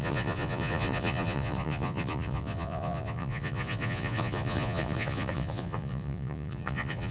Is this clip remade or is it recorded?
remade